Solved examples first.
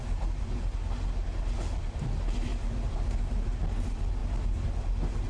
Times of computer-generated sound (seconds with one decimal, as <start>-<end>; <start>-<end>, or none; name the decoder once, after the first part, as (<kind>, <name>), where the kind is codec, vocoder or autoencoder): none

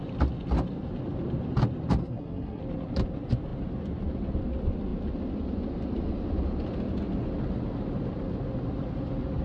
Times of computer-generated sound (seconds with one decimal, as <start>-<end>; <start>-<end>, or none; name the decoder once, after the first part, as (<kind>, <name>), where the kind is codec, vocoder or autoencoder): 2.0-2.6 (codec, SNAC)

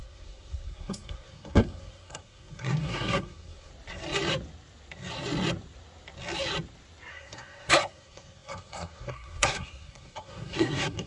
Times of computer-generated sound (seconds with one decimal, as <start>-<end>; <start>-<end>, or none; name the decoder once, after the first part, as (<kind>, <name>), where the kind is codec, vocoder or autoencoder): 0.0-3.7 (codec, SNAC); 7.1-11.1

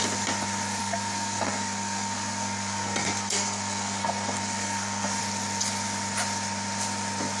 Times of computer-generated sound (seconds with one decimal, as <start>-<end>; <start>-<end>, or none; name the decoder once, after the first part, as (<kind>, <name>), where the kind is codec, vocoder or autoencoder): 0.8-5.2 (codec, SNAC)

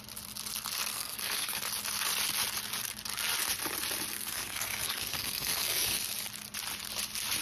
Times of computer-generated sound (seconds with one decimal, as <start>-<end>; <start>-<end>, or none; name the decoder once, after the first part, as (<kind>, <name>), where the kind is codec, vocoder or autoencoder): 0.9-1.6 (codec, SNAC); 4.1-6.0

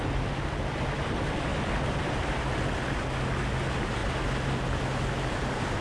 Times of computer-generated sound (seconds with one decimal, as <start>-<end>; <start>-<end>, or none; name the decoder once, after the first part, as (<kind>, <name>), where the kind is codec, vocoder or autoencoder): none